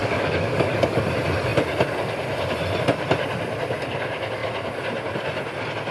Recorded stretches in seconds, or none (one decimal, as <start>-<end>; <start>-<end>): 1.0-5.9